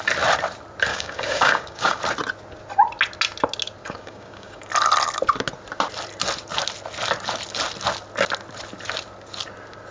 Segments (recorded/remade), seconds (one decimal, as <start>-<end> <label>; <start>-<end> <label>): 0.0-0.9 recorded; 0.9-2.0 remade; 2.0-3.8 recorded; 3.8-4.7 remade; 4.7-9.9 recorded